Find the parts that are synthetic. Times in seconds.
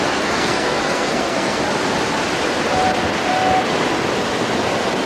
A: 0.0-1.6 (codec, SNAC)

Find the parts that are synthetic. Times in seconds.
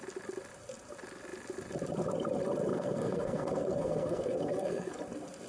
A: 2.7-5.0 (codec, SNAC)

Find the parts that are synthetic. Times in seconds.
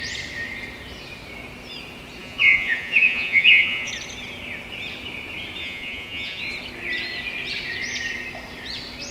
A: 2.2-3.9 (vocoder, Vocos); 5.6-6.4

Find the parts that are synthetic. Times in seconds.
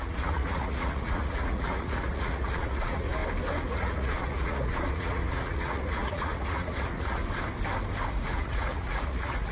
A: 0.0-3.2 (vocoder, Vocos); 3.7-7.2; 8.1-9.5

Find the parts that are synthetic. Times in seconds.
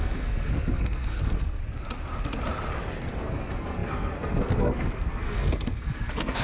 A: 0.0-1.6 (codec, SNAC); 3.2-6.4